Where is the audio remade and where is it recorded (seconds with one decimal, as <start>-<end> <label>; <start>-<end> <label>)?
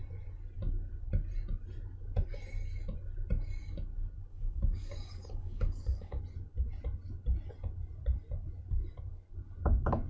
0.0-4.3 recorded; 4.3-6.2 remade; 6.2-10.1 recorded